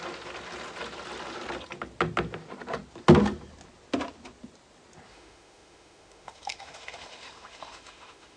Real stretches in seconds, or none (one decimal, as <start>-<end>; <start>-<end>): 0.0-5.1

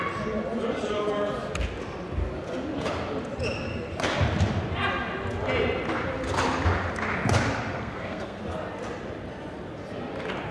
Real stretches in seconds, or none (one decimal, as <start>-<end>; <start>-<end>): 0.0-7.7; 8.4-10.5